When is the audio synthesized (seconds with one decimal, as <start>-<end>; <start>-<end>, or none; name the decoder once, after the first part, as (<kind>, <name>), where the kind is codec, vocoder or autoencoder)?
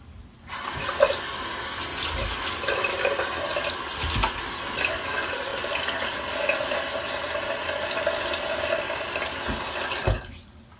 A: none